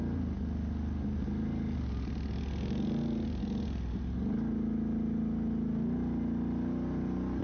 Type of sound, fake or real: real